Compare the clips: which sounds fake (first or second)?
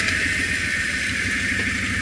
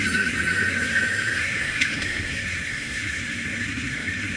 second